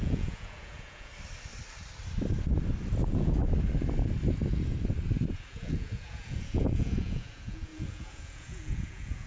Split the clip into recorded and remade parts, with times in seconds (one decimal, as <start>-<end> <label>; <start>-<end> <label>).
0.0-1.1 remade; 1.1-3.0 recorded; 3.0-3.4 remade; 3.4-5.3 recorded; 5.3-9.3 remade